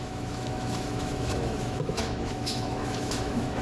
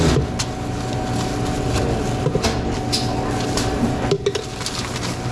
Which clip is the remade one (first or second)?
first